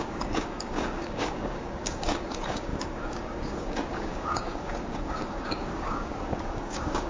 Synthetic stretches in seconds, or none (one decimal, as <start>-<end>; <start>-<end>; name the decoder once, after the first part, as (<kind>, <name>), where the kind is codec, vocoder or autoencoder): 0.0-7.1 (codec, DAC)